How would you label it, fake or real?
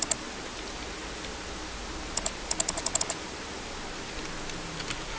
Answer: real